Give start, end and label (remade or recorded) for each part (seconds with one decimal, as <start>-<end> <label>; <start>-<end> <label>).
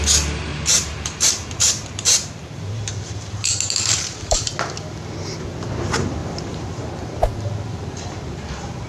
0.0-0.5 recorded; 0.5-4.5 remade; 4.5-6.2 recorded; 6.2-8.9 remade